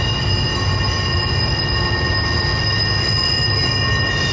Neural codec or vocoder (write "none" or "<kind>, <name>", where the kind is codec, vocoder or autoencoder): none